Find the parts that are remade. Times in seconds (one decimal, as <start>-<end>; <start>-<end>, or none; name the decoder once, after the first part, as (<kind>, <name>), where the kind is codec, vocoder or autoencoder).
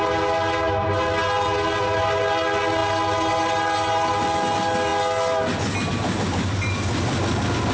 none